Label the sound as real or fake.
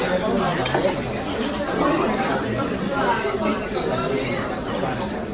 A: fake